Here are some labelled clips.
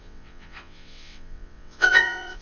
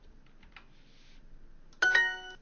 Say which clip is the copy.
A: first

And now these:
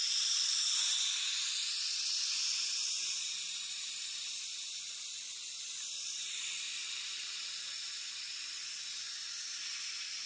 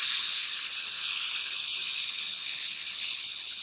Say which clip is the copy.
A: second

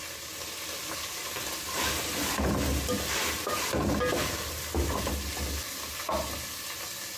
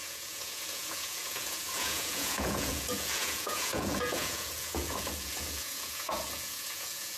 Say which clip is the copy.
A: second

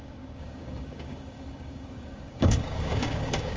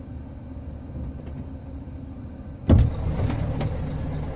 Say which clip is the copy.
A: first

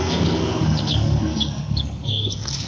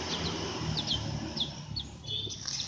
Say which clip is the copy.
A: first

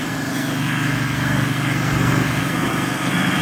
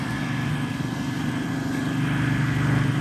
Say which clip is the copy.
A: first